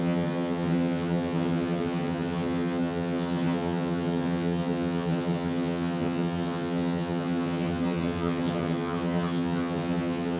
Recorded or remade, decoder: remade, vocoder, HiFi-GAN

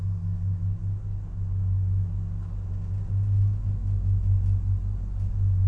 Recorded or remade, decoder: recorded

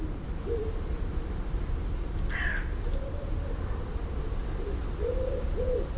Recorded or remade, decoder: recorded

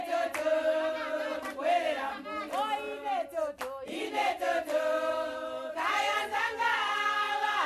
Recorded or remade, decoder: recorded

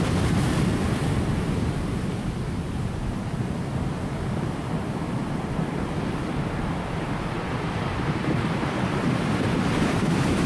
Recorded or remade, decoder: recorded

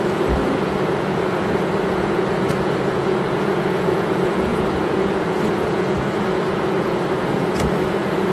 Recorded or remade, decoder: remade, vocoder, Vocos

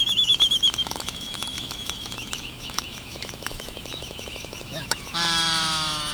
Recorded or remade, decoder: remade, autoencoder, DAC-VAE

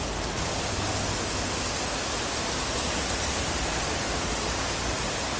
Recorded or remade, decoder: recorded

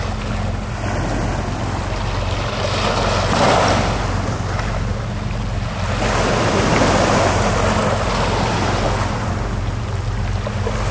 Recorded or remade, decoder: recorded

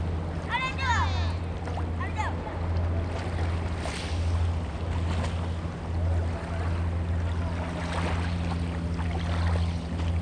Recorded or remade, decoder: recorded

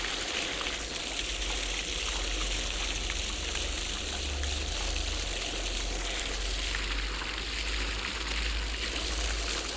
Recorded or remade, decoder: recorded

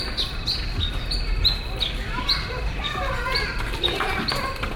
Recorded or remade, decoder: recorded